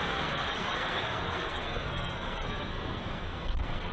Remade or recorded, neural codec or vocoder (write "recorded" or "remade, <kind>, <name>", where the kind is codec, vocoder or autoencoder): remade, codec, SNAC